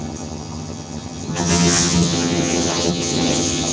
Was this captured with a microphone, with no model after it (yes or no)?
no